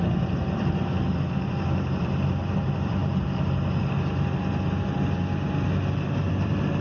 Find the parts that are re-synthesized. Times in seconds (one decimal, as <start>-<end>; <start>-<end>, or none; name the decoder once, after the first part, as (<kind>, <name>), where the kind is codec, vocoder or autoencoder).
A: 0.0-3.0 (vocoder, BigVGAN v2); 6.2-6.8